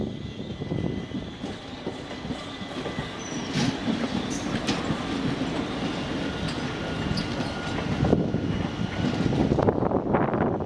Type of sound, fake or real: real